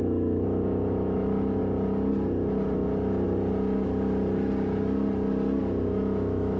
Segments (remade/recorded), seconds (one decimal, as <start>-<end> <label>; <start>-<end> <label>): 0.0-1.6 remade; 1.6-5.6 recorded; 5.6-6.6 remade

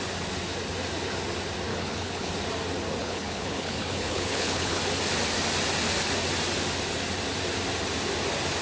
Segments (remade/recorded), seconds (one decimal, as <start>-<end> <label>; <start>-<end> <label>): 0.0-1.7 recorded; 1.7-2.3 remade; 2.3-3.0 recorded; 3.0-4.8 remade; 4.8-8.6 recorded